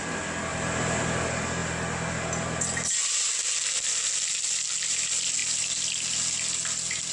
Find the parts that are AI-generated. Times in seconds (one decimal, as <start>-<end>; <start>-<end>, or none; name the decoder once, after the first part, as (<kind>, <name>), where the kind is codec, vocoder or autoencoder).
0.5-1.0 (vocoder, BigVGAN v2)